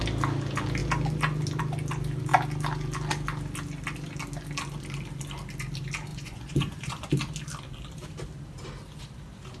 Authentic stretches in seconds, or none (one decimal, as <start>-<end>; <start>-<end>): 0.0-6.1; 7.1-9.6